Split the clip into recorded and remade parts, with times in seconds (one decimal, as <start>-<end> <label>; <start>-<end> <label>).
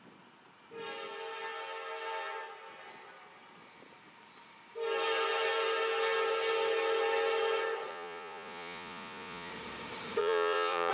0.0-7.9 recorded; 7.9-9.5 remade; 9.5-10.2 recorded; 10.2-10.9 remade